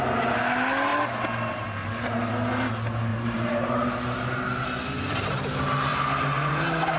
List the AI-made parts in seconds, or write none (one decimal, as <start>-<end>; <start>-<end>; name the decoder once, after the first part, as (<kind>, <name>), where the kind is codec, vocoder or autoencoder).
3.1-3.7 (vocoder, BigVGAN v2); 5.9-6.5